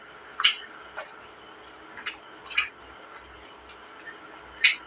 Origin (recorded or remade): recorded